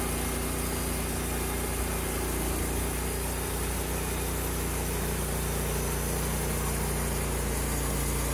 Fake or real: real